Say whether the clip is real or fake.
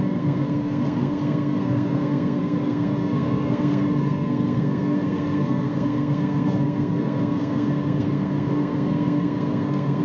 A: fake